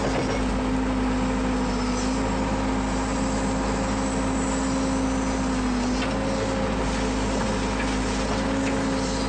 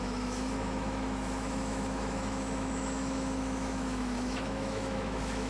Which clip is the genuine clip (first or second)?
first